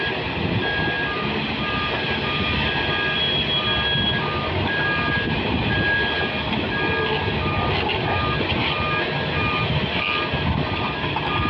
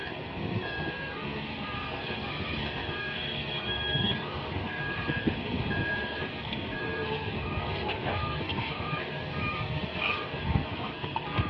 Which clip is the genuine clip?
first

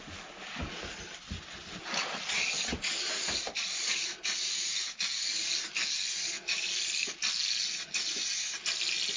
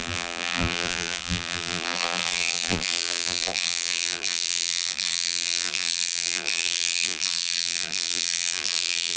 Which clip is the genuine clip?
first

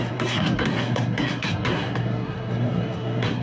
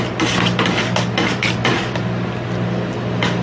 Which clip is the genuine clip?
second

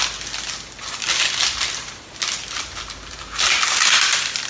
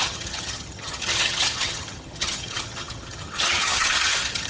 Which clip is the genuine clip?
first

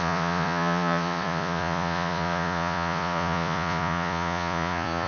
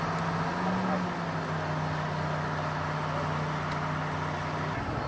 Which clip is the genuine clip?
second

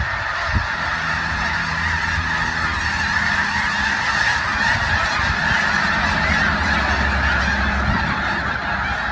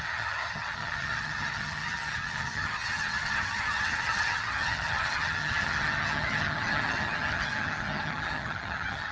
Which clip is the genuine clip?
first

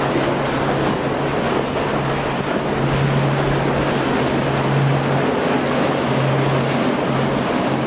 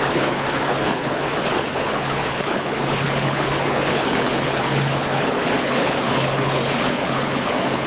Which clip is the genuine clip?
first